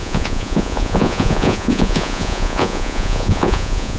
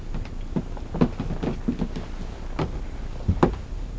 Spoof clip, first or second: first